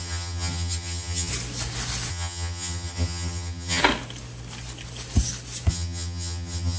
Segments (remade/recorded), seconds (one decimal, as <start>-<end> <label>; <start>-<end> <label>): 0.0-1.3 remade; 1.3-2.1 recorded; 2.1-3.8 remade; 3.8-5.7 recorded; 5.7-6.8 remade